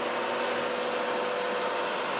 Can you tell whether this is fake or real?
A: real